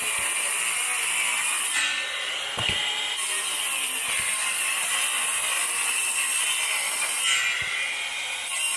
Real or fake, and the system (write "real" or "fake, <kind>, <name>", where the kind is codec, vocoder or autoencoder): real